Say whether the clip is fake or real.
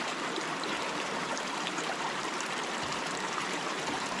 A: fake